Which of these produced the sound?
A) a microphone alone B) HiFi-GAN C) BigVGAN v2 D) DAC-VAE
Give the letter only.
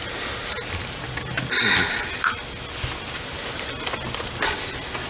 A